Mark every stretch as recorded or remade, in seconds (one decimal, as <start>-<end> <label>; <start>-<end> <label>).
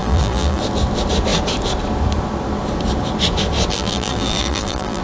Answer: 0.0-0.6 remade; 0.6-3.7 recorded; 3.7-5.0 remade